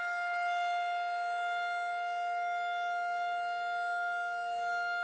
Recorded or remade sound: recorded